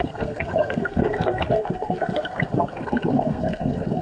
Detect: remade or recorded remade